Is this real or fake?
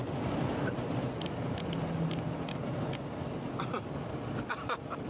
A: real